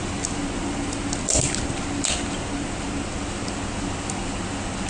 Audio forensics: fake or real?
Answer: real